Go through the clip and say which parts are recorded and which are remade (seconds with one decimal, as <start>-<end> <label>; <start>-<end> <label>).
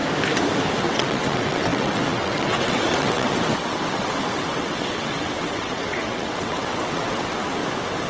0.0-0.8 recorded; 0.8-7.6 remade; 7.6-8.1 recorded